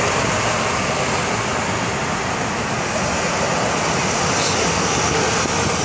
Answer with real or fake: real